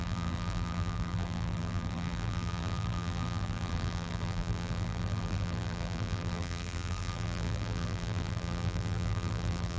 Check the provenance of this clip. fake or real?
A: fake